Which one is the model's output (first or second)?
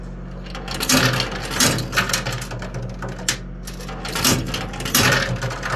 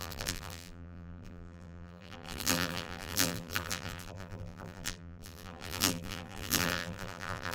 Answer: second